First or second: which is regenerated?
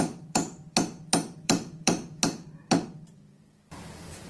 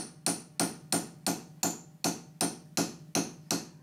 first